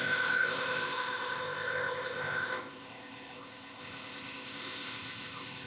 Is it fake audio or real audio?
fake